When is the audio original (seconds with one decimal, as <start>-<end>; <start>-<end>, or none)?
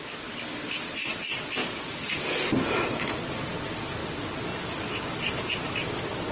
0.0-1.6; 3.0-4.0